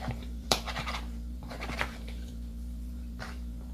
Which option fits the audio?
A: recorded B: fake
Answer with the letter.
B